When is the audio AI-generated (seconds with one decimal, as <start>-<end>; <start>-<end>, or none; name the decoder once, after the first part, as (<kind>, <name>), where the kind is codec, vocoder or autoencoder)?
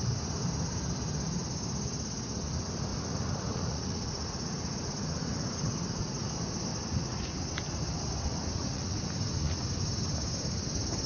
2.9-6.2 (vocoder, Vocos); 6.7-7.5; 8.3-9.7